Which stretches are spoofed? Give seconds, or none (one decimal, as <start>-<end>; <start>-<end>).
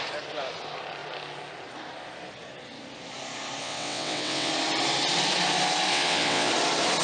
3.6-4.5; 5.9-6.5